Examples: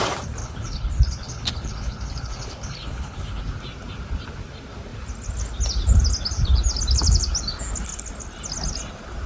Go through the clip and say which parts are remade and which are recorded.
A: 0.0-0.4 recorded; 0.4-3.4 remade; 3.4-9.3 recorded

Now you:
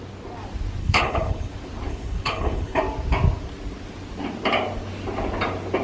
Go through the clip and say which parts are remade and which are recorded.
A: 0.0-0.8 recorded; 0.8-1.5 remade; 1.5-1.9 recorded; 1.9-2.8 remade; 2.8-5.8 recorded

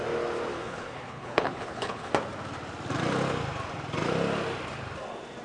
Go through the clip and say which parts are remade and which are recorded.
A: 0.0-0.5 recorded; 0.5-2.1 remade; 2.1-5.4 recorded

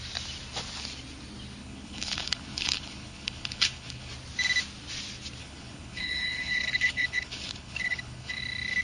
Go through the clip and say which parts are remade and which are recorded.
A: 0.0-1.6 recorded; 1.6-4.1 remade; 4.1-5.4 recorded; 5.4-8.4 remade; 8.4-8.8 recorded

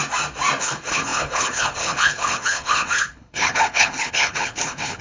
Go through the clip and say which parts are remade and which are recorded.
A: 0.0-0.6 recorded; 0.6-5.0 remade